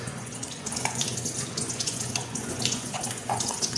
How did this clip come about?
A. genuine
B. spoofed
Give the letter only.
B